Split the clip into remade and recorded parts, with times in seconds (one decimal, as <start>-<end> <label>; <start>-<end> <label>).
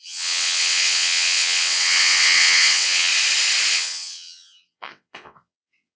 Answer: 0.0-3.1 remade; 3.1-3.7 recorded; 3.7-6.0 remade